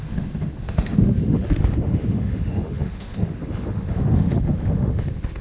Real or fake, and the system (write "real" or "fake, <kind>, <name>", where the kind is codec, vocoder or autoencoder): fake, autoencoder, DAC-VAE